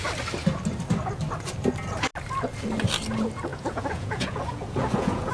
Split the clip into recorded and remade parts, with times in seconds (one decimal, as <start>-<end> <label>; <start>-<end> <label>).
0.0-3.5 recorded; 3.5-5.3 remade